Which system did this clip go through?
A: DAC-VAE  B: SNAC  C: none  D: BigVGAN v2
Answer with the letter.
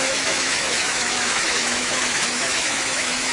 A